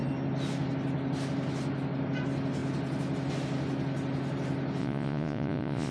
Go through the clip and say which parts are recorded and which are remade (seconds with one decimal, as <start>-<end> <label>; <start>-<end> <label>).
0.0-4.8 recorded; 4.8-5.9 remade